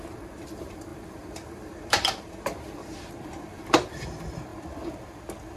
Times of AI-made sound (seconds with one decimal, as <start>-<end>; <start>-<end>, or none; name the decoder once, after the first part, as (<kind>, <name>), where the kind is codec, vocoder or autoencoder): 0.0-4.5 (vocoder, BigVGAN v2)